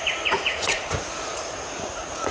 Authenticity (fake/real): fake